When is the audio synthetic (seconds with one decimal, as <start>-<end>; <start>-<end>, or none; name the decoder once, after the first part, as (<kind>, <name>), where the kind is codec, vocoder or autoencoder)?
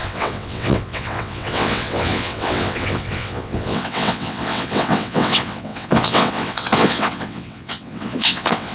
0.0-8.7 (vocoder, WaveNeXt)